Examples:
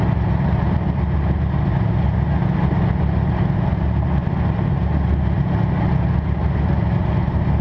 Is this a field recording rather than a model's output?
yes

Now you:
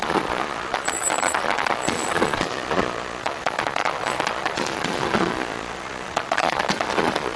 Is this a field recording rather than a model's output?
no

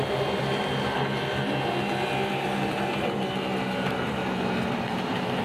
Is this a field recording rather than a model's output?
yes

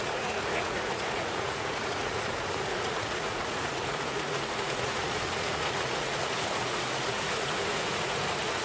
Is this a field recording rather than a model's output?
no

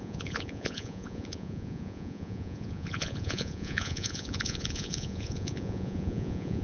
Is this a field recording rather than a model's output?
no